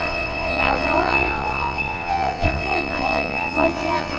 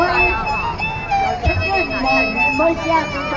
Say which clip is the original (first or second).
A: second